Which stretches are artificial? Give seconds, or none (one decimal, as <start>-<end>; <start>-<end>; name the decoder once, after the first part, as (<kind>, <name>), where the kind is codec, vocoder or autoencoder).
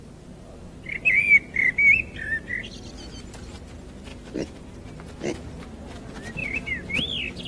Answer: 4.1-4.7 (vocoder, BigVGAN v2)